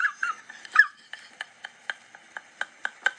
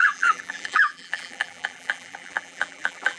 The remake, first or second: second